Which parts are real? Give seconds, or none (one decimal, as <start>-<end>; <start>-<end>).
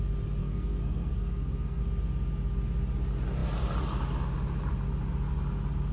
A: 0.0-0.4; 1.8-5.9